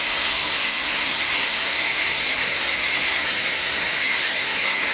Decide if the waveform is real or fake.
fake